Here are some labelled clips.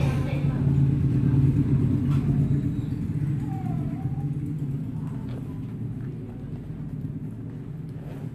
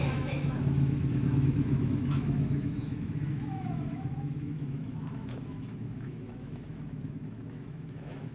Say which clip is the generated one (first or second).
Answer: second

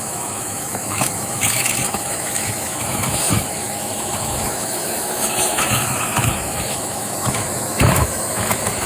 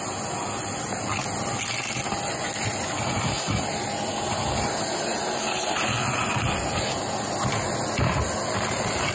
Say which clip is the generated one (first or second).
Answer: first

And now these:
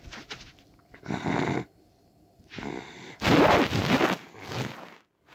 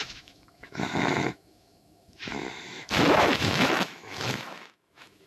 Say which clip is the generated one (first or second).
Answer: second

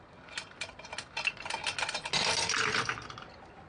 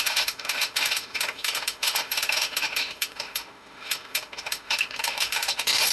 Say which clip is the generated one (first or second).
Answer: second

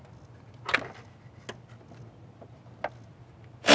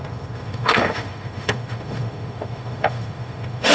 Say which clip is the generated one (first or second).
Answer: second